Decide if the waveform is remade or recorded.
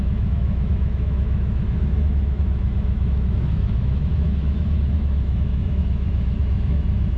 remade